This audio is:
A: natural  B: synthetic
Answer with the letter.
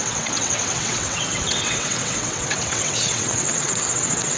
B